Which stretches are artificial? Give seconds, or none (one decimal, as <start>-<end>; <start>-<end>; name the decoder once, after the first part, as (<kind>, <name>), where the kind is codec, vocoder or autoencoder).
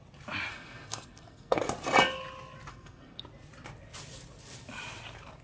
0.5-1.6 (codec, SNAC); 2.7-3.2